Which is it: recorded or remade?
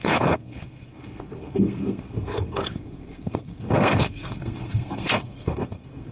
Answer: remade